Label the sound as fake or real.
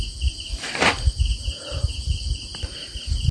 real